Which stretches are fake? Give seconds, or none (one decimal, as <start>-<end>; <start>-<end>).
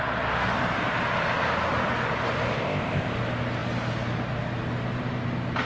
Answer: 2.6-3.1